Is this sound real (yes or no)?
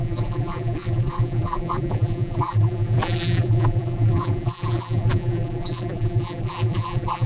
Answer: no